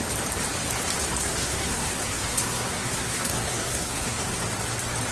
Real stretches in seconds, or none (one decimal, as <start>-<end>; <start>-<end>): 0.0-1.2; 4.3-5.1